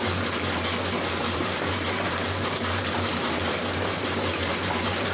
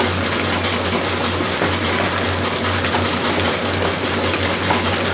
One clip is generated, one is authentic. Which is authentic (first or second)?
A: second